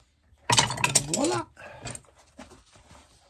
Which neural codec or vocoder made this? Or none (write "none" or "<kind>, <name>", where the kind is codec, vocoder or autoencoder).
none